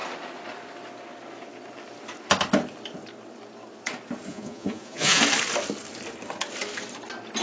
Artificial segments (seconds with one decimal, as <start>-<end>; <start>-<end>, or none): 4.3-5.2